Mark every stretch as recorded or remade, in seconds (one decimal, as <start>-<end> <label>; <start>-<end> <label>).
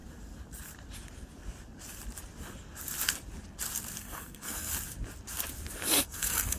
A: 0.0-4.0 recorded; 4.0-4.7 remade; 4.7-6.0 recorded; 6.0-6.6 remade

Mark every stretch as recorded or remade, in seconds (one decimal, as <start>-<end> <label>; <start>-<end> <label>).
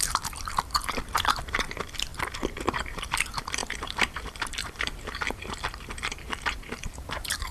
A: 0.0-2.1 remade; 2.1-2.7 recorded; 2.7-7.5 remade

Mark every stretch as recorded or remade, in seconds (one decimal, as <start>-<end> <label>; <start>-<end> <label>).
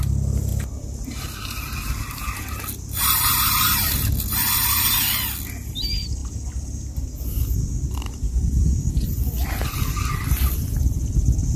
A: 0.0-0.5 remade; 0.5-1.2 recorded; 1.2-6.2 remade; 6.2-8.9 recorded; 8.9-11.6 remade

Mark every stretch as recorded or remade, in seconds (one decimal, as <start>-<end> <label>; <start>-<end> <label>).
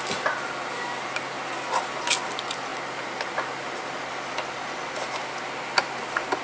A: 0.0-6.4 recorded